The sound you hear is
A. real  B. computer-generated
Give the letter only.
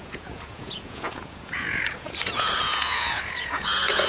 B